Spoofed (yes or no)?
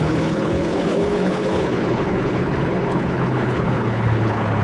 yes